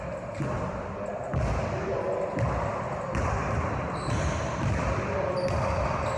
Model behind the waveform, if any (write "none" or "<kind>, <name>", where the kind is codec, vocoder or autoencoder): none